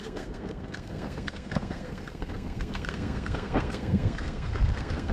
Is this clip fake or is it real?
fake